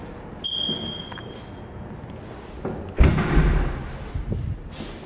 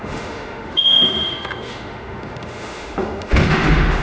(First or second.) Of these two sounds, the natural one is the first